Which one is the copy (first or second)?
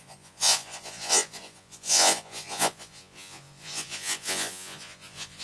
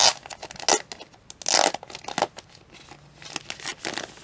first